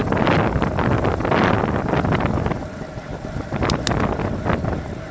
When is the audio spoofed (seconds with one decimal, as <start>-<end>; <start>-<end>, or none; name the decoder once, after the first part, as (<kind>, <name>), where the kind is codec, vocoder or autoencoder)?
none